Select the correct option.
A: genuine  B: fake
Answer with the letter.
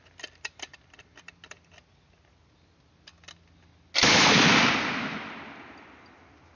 A